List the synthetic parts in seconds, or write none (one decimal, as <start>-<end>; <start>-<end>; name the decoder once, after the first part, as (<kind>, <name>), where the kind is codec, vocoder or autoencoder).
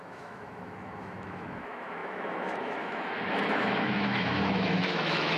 0.0-5.4 (autoencoder, DAC-VAE)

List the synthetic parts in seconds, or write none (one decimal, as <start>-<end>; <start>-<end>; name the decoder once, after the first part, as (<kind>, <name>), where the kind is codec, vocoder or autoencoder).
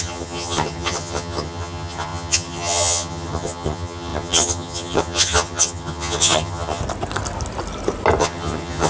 0.0-6.8 (vocoder, HiFi-GAN); 8.2-8.9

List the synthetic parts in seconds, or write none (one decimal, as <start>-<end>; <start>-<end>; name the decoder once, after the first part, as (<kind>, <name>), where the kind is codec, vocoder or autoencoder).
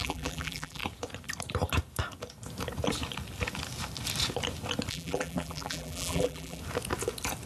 0.0-0.8 (vocoder, BigVGAN v2); 4.9-6.6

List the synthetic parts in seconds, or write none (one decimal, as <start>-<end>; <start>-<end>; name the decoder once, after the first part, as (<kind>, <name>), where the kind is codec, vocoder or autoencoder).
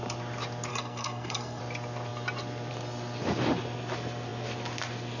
0.7-1.6 (codec, SNAC)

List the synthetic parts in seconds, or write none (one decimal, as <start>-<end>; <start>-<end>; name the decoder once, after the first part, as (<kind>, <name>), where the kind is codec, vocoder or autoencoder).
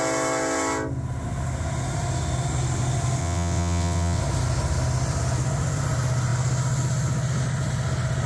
3.2-4.2 (vocoder, WaveNeXt)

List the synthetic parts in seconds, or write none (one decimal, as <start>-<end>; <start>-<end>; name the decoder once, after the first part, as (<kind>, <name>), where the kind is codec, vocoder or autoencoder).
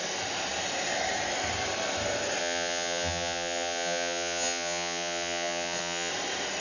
2.4-6.1 (vocoder, WaveNeXt)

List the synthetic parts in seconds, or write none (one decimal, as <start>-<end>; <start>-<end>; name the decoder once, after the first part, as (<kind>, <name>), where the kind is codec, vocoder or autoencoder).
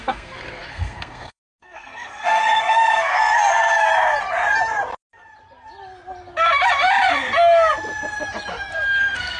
0.0-3.9 (codec, SNAC); 9.0-9.4